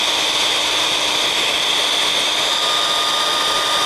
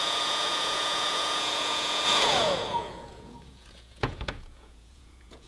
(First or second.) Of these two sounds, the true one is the first